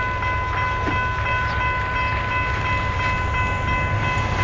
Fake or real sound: real